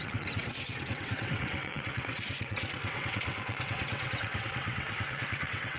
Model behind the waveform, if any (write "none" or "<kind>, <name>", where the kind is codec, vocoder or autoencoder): vocoder, WaveNeXt